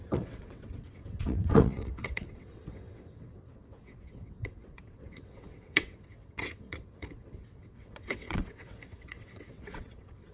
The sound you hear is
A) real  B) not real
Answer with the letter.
B